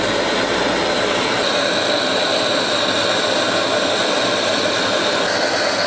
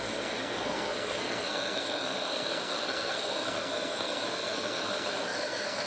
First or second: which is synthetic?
second